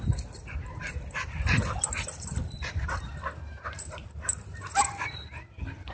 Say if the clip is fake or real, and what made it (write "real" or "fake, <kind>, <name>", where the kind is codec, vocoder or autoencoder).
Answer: fake, vocoder, BigVGAN v2